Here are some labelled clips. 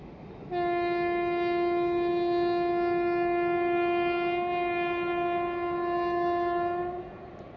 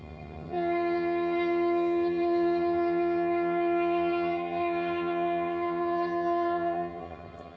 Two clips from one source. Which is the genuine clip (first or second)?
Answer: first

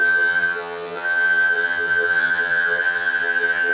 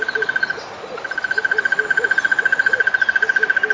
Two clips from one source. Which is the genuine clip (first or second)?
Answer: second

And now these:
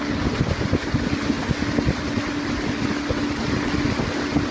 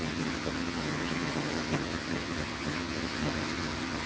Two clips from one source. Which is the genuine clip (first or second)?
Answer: first